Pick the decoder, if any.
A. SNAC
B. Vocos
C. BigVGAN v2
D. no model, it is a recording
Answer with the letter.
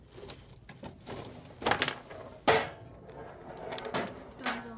D